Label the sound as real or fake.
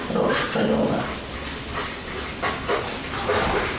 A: real